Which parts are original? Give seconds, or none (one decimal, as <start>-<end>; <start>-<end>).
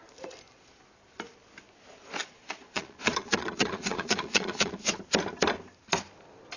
0.0-2.2; 4.9-6.6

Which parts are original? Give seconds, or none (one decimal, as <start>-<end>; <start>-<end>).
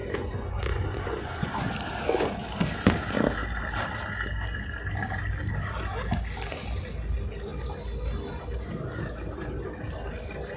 1.7-10.6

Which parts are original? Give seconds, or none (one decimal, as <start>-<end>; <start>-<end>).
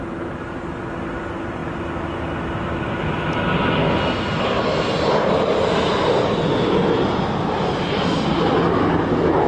0.0-9.5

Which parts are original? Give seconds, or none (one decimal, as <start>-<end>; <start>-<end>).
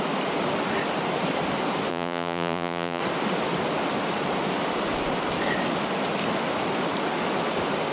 0.0-1.9; 3.0-7.9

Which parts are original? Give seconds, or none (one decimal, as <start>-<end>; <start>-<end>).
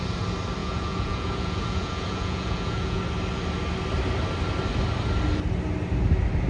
0.0-0.6; 3.0-6.5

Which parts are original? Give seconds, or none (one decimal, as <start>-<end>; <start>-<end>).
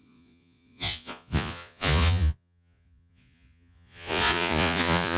none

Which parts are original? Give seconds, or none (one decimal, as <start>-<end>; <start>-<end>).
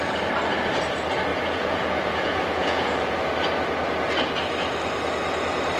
0.0-1.3; 3.2-5.8